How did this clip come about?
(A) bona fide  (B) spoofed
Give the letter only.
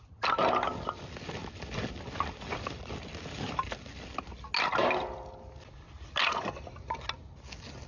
A